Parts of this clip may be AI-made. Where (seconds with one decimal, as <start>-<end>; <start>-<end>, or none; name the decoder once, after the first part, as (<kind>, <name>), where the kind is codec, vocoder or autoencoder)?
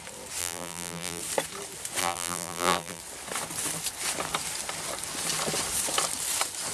0.4-1.2 (vocoder, BigVGAN v2); 2.0-3.0